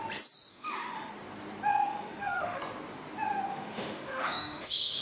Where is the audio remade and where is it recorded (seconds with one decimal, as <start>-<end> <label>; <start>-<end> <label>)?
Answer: 0.0-0.5 recorded; 0.5-1.1 remade; 1.1-1.7 recorded; 1.7-2.6 remade; 2.6-3.5 recorded; 3.5-5.0 remade